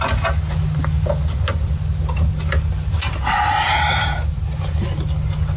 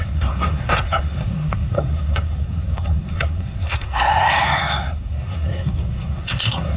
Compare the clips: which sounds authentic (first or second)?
first